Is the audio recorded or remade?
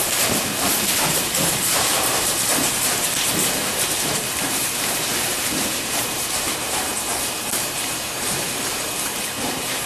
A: remade